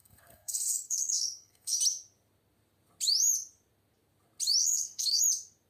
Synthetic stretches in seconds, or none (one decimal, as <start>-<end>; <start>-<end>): 0.0-1.8; 4.6-5.2